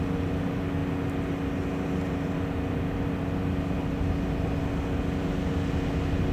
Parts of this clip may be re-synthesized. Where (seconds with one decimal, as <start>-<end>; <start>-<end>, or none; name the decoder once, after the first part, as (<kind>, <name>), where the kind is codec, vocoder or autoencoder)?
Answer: none